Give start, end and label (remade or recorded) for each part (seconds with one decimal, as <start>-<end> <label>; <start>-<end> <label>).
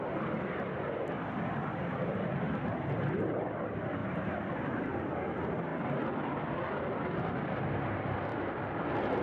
0.0-4.0 recorded; 4.0-4.8 remade; 4.8-5.7 recorded; 5.7-7.0 remade; 7.0-8.3 recorded; 8.3-9.2 remade